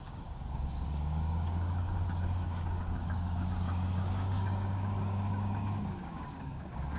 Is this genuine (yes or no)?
no